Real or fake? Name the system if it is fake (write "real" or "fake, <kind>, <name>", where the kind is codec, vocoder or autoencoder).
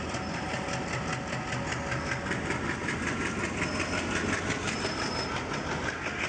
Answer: real